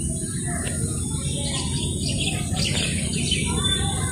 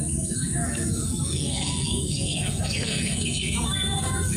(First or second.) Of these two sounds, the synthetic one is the second